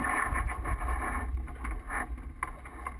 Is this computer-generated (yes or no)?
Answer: no